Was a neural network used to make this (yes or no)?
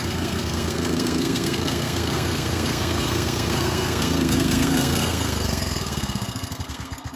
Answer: yes